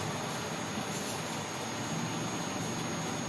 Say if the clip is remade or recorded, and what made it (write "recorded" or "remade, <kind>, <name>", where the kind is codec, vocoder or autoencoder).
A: recorded